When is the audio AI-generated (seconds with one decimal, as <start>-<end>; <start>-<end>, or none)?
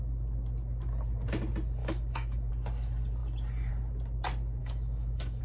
1.8-2.5; 4.6-5.4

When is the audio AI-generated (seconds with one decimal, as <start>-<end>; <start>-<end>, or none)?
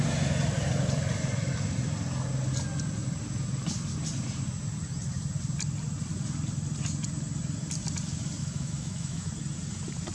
8.4-9.3